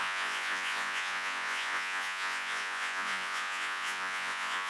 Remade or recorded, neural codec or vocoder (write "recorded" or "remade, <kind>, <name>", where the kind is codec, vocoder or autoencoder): remade, vocoder, Vocos